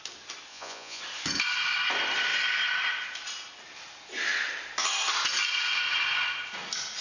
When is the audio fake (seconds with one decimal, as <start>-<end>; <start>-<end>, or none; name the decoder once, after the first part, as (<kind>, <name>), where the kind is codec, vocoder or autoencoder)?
0.5-1.0 (vocoder, Vocos)